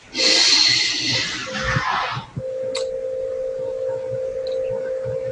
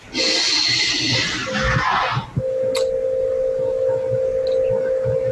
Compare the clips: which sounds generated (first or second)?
first